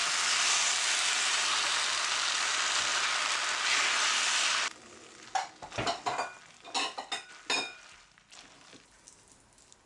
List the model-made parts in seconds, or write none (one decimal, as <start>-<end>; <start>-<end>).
none